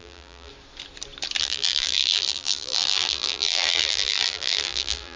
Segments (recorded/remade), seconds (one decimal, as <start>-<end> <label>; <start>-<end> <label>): 0.0-0.5 remade; 0.5-1.4 recorded; 1.4-5.2 remade